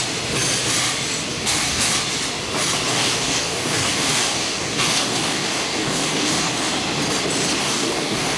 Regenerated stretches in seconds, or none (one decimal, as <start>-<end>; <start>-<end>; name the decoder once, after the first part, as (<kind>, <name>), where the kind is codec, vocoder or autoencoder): 1.3-1.9 (codec, DAC); 2.9-6.7; 7.6-8.4